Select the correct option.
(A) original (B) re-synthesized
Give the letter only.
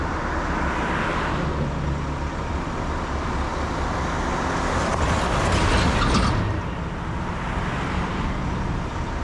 A